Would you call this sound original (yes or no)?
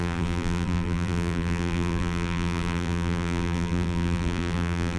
no